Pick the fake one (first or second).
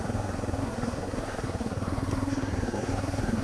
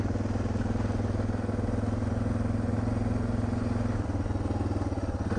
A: first